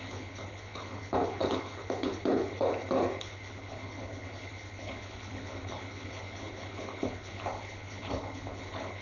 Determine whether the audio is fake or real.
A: fake